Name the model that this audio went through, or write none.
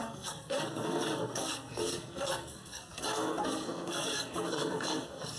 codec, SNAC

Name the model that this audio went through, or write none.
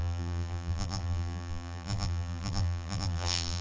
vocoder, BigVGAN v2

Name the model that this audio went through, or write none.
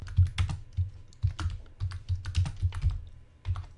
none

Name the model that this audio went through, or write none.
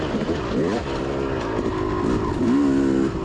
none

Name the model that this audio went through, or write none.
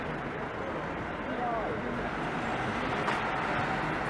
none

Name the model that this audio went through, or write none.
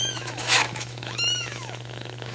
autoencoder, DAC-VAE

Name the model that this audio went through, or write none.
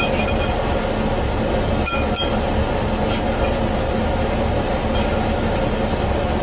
none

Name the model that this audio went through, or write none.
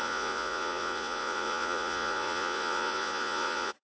vocoder, Vocos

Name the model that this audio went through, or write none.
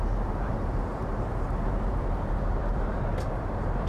vocoder, BigVGAN v2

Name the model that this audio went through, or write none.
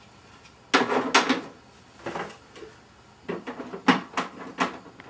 none